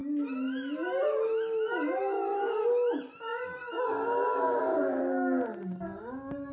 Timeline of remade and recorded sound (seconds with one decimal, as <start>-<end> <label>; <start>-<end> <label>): 0.0-6.5 recorded